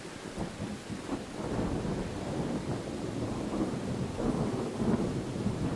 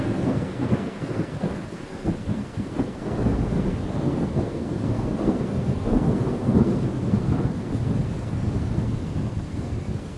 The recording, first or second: first